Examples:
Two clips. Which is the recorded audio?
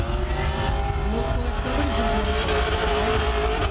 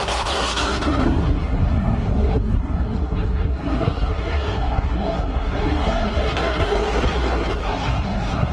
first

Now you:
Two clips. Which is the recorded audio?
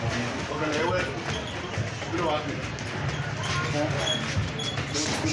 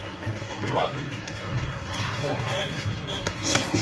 first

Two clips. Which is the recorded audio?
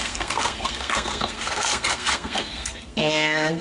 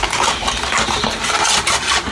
second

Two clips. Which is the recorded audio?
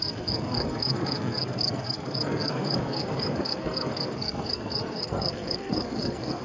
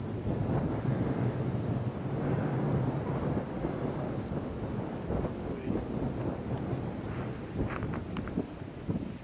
second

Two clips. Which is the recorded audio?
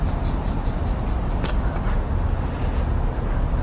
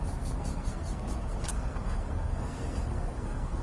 first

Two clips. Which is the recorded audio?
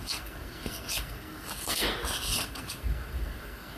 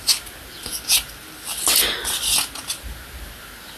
second